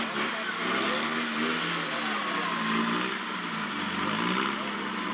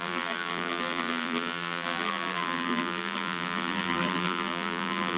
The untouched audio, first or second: first